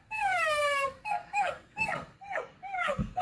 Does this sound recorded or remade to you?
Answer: remade